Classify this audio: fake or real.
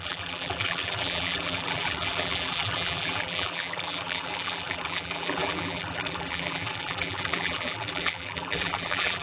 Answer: fake